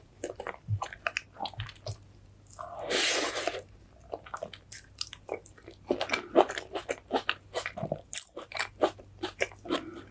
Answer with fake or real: real